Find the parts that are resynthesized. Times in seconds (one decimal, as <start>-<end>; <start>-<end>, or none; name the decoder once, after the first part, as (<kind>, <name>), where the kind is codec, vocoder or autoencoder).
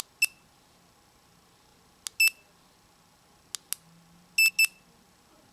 none